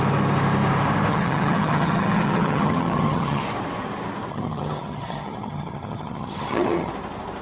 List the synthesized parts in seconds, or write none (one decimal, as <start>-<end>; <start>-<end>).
1.1-3.4; 4.3-6.9